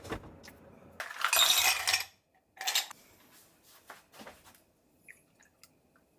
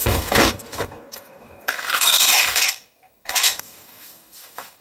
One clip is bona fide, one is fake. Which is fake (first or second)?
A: second